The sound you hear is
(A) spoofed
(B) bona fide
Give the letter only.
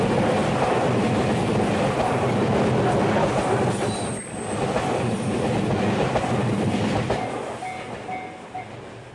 B